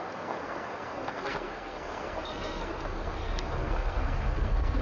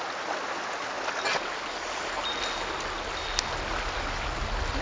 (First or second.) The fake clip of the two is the first